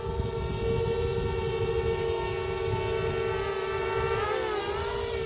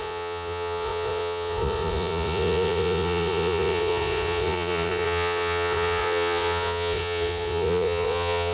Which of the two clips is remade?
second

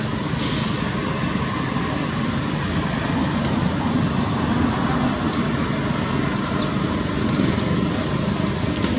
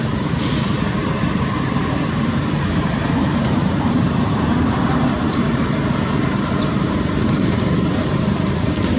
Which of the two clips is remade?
second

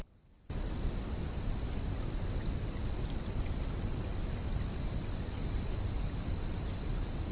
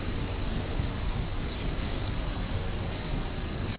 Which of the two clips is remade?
second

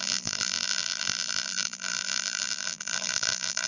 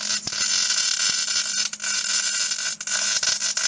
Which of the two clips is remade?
first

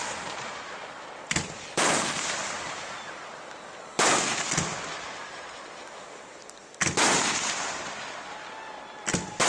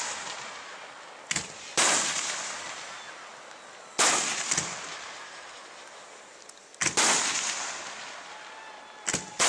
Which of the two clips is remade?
first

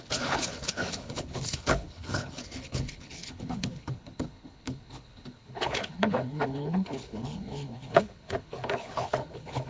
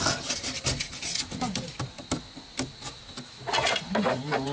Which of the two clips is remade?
first